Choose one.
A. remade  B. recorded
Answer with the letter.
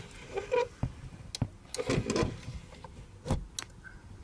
B